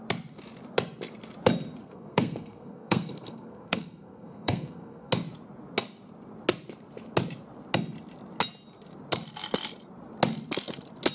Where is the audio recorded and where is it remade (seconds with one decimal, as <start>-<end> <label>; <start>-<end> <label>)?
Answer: 0.0-1.8 recorded; 1.8-5.1 remade; 5.1-11.1 recorded